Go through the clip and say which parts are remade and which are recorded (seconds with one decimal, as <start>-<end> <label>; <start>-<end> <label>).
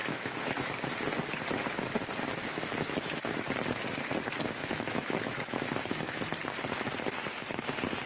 0.0-0.7 remade; 0.7-2.4 recorded; 2.4-3.3 remade; 3.3-4.6 recorded; 4.6-6.2 remade; 6.2-8.1 recorded